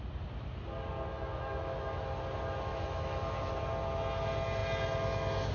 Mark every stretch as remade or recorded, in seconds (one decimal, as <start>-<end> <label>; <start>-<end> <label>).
0.0-1.1 recorded; 1.1-2.0 remade; 2.0-2.7 recorded; 2.7-3.5 remade; 3.5-5.5 recorded